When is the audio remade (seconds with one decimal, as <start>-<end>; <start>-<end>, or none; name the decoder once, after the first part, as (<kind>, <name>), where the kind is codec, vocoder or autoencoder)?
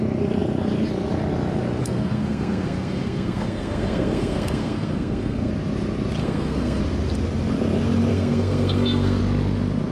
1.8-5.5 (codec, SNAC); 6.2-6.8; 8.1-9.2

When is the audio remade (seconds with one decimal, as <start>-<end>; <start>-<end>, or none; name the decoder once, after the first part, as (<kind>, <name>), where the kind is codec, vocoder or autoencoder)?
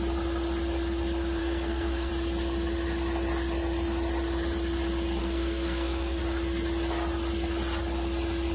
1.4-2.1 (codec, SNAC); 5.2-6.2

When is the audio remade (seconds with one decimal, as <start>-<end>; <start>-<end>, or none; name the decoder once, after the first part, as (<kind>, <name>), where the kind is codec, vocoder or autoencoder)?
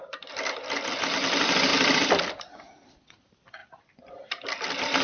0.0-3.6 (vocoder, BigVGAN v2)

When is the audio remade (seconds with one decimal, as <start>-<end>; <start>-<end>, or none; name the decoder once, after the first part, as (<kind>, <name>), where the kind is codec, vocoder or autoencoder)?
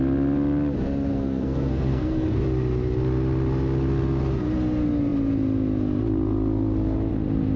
1.1-2.4 (codec, SNAC)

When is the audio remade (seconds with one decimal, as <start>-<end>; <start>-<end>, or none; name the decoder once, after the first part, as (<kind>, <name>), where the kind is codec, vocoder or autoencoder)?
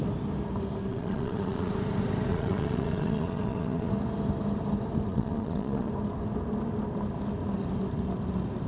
0.9-1.7 (vocoder, Vocos); 2.3-3.9; 5.1-5.9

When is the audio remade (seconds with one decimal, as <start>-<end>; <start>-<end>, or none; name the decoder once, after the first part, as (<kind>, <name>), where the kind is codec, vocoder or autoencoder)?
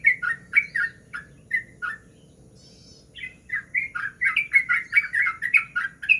none